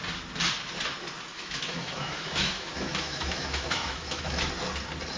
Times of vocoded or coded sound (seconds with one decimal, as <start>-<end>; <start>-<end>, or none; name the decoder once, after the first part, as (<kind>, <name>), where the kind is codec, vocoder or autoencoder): 1.3-4.4 (autoencoder, DAC-VAE)